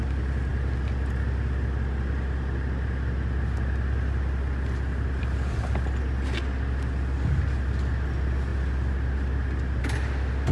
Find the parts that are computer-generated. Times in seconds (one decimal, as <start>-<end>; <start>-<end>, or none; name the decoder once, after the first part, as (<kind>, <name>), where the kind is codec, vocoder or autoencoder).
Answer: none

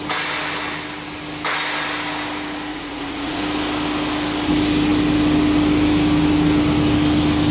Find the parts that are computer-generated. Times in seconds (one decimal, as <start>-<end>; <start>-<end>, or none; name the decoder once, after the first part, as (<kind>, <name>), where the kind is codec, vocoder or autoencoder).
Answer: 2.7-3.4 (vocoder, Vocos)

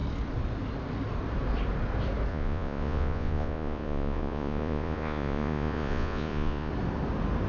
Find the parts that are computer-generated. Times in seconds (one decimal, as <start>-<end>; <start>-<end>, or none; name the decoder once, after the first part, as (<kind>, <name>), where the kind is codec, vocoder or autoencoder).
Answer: 2.3-6.7 (vocoder, Vocos)

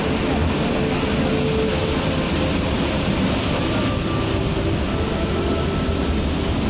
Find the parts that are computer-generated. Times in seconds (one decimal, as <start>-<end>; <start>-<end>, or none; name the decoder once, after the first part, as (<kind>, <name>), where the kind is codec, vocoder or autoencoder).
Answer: none

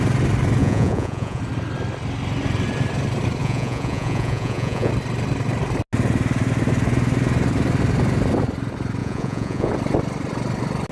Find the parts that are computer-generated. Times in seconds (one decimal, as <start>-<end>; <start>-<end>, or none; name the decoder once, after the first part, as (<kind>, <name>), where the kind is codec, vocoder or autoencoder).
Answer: 0.6-1.4 (vocoder, Vocos); 3.4-4.9; 9.0-9.7

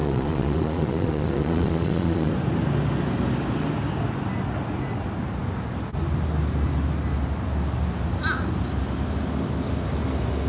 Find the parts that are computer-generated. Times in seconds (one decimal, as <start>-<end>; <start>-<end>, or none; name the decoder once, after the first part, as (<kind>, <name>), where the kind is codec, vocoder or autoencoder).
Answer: 0.0-2.3 (vocoder, Vocos)